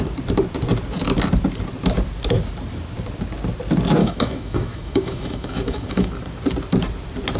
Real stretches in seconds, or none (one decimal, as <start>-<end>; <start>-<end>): 0.0-4.0; 6.1-7.4